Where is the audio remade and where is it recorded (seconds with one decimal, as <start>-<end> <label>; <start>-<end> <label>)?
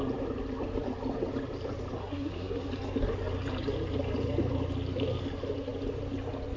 0.0-2.0 recorded; 2.0-2.7 remade; 2.7-6.6 recorded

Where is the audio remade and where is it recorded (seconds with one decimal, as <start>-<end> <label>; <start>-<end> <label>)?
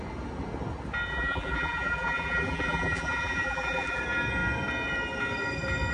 0.0-1.1 recorded; 1.1-4.0 remade; 4.0-5.9 recorded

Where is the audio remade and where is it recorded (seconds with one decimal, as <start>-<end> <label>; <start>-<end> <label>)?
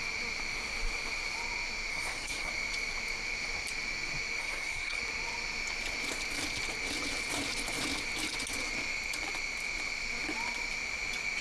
0.0-1.9 recorded; 1.9-2.5 remade; 2.5-4.4 recorded; 4.4-5.0 remade; 5.0-11.4 recorded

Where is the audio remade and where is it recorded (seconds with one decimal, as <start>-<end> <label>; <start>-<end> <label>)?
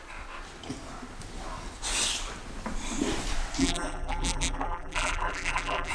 0.0-3.6 recorded; 3.6-5.9 remade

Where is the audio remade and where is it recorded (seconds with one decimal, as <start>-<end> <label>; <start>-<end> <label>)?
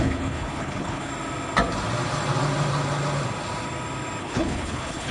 0.0-1.1 remade; 1.1-4.2 recorded; 4.2-5.1 remade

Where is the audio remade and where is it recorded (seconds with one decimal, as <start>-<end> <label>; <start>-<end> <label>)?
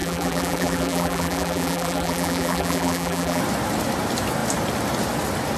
0.0-3.4 remade; 3.4-5.6 recorded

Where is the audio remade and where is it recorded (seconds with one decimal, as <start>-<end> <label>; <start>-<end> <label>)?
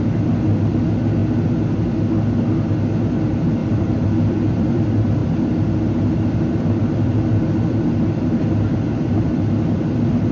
0.0-3.6 recorded; 3.6-4.8 remade; 4.8-5.2 recorded; 5.2-9.9 remade; 9.9-10.3 recorded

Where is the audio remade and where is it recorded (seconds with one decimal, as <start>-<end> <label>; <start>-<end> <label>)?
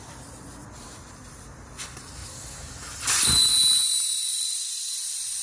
0.0-2.2 remade; 2.2-3.0 recorded; 3.0-5.4 remade